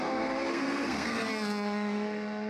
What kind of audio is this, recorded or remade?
remade